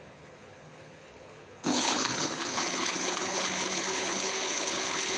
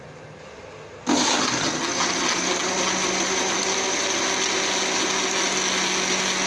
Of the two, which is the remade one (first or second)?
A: first